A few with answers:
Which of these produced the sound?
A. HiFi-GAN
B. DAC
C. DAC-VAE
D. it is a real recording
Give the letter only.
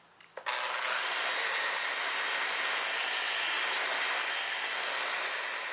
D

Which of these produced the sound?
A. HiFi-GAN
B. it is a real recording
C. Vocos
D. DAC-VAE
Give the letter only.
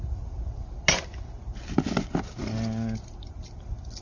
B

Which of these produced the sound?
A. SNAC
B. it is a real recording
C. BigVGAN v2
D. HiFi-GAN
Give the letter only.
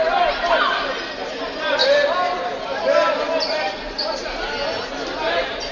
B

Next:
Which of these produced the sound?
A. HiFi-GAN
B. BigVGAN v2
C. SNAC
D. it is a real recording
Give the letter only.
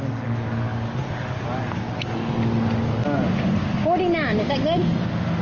D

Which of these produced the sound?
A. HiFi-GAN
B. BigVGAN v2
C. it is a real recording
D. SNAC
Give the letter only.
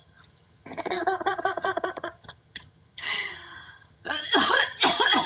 A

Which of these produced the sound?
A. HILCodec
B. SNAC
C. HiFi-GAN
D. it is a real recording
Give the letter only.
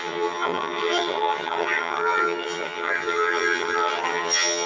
C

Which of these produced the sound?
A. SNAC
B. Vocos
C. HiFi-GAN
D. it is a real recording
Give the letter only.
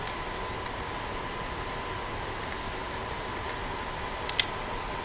D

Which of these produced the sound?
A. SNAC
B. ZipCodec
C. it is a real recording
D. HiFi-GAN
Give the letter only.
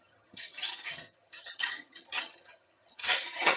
D